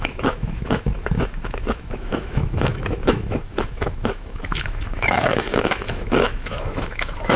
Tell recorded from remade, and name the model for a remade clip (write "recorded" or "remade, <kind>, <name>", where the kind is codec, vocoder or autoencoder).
remade, autoencoder, DAC-VAE